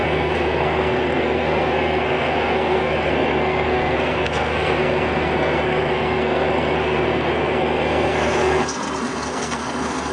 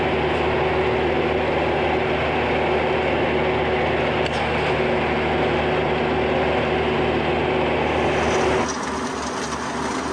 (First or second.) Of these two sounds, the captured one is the second